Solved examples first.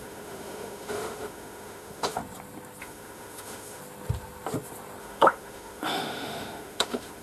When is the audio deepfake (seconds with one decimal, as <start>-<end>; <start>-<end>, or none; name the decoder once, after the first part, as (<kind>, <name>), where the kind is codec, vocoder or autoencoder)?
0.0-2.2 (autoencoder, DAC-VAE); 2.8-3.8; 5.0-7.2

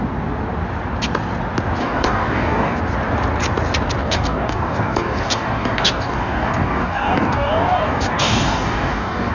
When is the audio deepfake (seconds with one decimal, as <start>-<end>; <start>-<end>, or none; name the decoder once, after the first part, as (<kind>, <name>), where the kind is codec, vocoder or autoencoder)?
1.8-2.8 (codec, DAC); 4.0-9.3

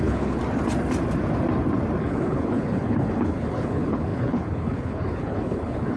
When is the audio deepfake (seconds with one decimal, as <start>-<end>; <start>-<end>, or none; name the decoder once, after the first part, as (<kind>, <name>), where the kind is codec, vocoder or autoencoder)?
0.0-0.4 (codec, HILCodec); 2.0-6.0

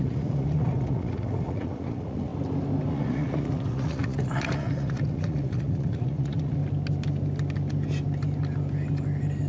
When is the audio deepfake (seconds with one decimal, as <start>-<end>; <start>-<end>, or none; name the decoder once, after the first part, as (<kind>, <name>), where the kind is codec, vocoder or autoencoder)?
0.0-2.3 (vocoder, Vocos); 2.9-6.6

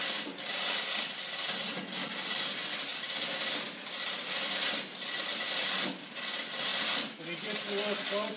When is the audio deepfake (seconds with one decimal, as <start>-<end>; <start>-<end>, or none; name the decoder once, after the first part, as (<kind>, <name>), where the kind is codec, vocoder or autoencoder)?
none

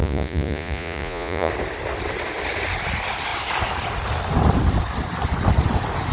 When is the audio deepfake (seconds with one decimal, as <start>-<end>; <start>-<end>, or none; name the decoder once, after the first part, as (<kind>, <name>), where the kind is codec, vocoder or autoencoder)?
0.0-1.5 (vocoder, Vocos)

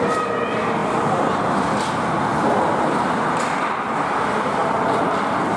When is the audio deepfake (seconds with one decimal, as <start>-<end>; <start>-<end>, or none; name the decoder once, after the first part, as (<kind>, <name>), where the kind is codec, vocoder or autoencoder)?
none

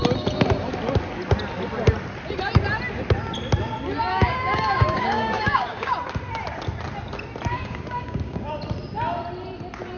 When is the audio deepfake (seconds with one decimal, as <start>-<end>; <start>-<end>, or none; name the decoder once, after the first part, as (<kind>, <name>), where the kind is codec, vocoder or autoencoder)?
4.1-5.9 (codec, DAC); 7.5-8.5